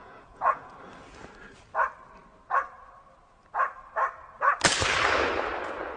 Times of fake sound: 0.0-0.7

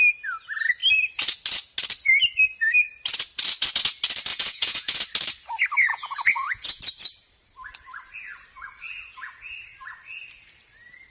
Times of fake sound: 4.3-5.0; 5.9-6.8

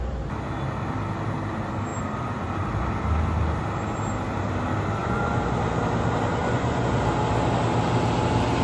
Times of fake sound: 5.0-5.6; 6.4-7.0

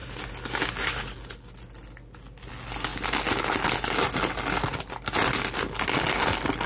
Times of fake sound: none

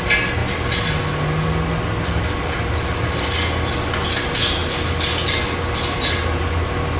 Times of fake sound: none